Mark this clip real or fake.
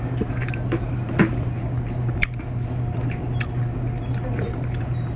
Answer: real